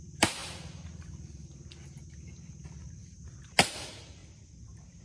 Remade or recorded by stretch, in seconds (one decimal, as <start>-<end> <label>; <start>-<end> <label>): 0.0-0.4 remade; 0.4-3.4 recorded; 3.4-5.0 remade